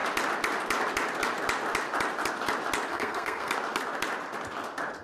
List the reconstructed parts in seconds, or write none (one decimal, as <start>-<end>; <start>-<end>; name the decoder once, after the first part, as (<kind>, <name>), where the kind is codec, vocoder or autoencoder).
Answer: 2.9-3.5 (codec, SNAC)